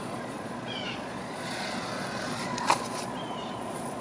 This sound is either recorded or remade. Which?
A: remade